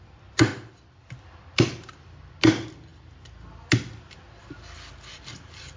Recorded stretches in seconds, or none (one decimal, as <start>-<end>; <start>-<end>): 0.0-5.8